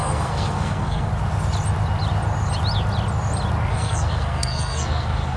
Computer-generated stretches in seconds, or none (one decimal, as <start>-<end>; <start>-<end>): 0.0-1.1; 3.7-5.4